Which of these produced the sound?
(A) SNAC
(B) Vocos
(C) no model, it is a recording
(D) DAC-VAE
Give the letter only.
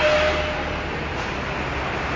C